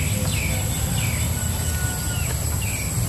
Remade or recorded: recorded